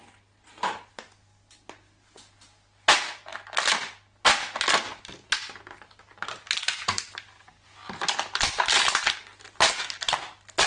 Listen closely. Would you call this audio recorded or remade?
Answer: recorded